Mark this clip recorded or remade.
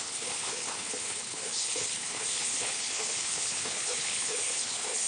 remade